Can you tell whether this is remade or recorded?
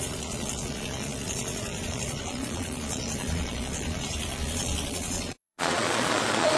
remade